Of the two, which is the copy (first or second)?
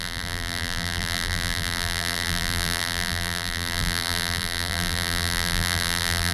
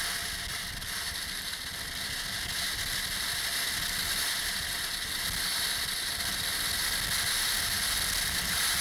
first